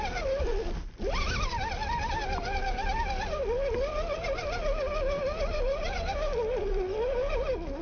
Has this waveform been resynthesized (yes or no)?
no